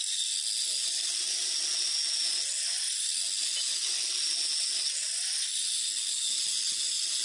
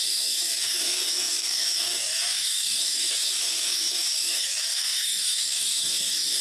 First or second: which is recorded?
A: first